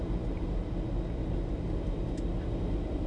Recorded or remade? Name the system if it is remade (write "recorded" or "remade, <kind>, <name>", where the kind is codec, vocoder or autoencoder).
recorded